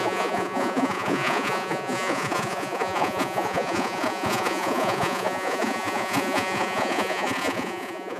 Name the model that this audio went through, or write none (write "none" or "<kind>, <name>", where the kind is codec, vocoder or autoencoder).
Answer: vocoder, Vocos